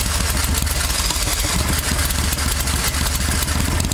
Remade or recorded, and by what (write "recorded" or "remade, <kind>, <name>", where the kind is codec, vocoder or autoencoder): recorded